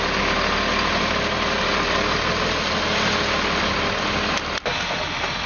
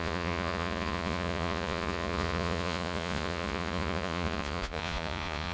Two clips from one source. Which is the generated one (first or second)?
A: second